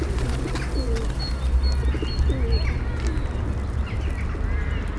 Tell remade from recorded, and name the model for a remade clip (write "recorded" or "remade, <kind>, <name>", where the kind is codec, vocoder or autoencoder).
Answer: recorded